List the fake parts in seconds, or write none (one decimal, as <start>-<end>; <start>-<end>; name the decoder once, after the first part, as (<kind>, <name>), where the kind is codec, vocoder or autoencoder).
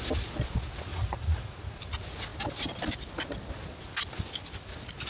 0.9-1.8 (vocoder, Vocos)